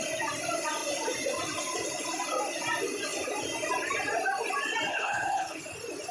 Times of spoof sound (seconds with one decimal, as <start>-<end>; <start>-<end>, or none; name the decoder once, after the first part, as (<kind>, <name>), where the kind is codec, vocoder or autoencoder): 4.9-5.6 (codec, HILCodec)

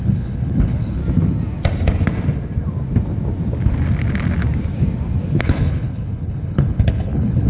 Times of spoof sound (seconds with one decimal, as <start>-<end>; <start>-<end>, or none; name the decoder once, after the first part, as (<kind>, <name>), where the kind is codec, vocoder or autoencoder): 0.0-1.0 (codec, HILCodec); 5.4-7.5

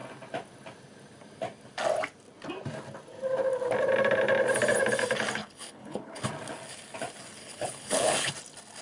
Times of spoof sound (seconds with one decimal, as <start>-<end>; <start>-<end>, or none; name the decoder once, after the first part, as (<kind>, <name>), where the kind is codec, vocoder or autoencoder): 5.4-6.2 (codec, HILCodec); 7.4-8.3

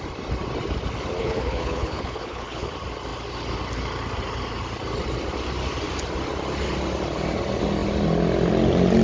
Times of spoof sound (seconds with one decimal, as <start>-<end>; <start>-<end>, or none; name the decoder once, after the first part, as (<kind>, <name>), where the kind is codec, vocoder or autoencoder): 1.2-2.7 (codec, HILCodec)

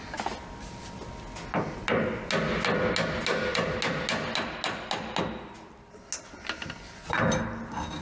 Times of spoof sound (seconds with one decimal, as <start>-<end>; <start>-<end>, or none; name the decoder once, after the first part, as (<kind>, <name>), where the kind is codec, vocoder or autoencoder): none

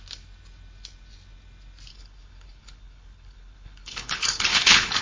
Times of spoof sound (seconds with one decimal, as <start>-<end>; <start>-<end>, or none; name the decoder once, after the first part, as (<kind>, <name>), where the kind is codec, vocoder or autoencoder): 1.9-5.0 (codec, HILCodec)

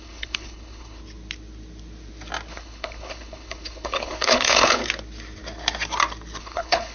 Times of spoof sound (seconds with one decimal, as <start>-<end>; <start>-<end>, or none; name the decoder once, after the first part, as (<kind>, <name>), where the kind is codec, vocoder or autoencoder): 0.0-1.0 (codec, HILCodec); 2.5-4.8; 6.4-6.9

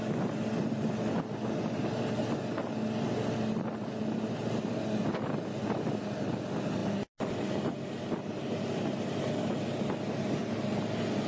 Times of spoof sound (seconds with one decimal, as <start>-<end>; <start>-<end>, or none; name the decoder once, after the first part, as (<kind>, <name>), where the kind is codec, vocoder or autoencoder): none